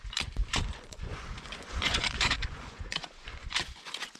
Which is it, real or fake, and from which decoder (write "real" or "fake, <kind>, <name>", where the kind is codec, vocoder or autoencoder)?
fake, vocoder, Vocos